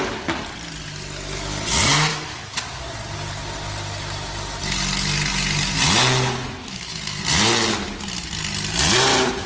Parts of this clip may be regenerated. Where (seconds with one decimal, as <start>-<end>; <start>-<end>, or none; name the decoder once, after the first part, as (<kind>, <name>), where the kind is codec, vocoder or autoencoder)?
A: 2.1-2.6 (autoencoder, DAC-VAE); 6.6-7.2